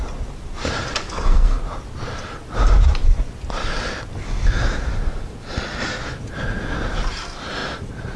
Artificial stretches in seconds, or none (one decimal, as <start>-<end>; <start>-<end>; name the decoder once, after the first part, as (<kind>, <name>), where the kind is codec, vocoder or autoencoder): 1.0-1.6 (codec, SNAC)